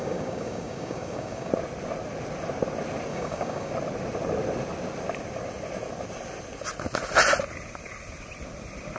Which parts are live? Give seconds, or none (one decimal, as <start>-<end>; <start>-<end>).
1.5-3.1; 3.7-9.0